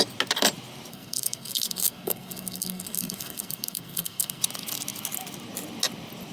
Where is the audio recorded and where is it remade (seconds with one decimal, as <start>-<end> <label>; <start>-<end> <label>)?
0.0-0.9 recorded; 0.9-4.4 remade; 4.4-6.3 recorded